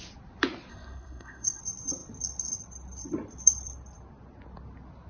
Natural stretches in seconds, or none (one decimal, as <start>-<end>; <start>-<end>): 0.0-0.7; 1.6-5.1